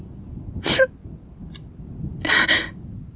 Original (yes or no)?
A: yes